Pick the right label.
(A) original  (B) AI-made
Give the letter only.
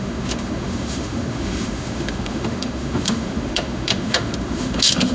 B